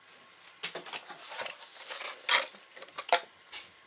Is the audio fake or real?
real